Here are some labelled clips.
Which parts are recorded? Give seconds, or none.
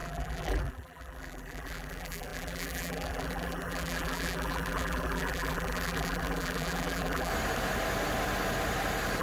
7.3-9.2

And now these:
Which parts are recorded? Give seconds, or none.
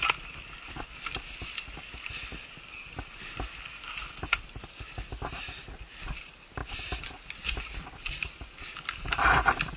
0.0-9.8